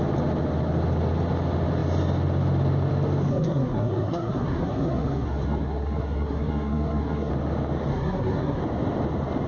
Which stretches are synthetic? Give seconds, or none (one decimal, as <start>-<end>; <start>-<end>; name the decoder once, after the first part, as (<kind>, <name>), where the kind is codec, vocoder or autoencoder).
3.3-7.3 (codec, SNAC); 7.9-8.6